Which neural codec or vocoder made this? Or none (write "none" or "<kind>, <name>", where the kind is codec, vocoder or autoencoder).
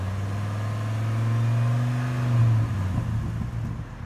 none